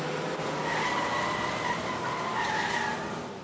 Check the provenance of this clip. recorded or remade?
recorded